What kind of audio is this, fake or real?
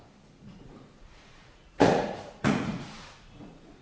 fake